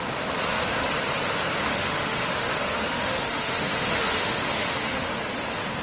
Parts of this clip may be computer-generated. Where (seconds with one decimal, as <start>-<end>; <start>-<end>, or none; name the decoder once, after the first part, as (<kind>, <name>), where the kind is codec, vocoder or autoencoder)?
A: 1.7-5.2 (autoencoder, DAC-VAE)